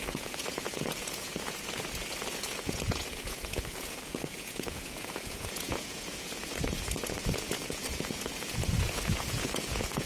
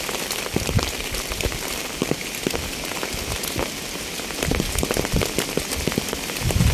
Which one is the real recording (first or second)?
second